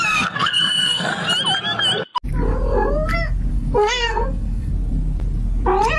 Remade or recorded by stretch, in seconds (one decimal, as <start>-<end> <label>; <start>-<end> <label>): 0.0-1.1 remade; 1.1-3.5 recorded; 3.5-4.7 remade; 4.7-6.0 recorded